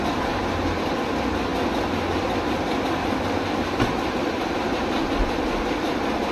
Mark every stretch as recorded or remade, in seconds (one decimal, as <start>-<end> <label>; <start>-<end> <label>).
0.0-6.3 recorded